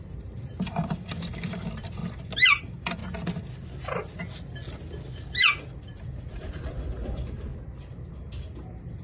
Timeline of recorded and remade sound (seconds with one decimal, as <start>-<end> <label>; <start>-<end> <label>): 0.0-2.0 remade; 2.0-2.6 recorded; 2.6-3.0 remade; 3.0-5.6 recorded; 5.6-7.5 remade; 7.5-8.1 recorded; 8.1-9.0 remade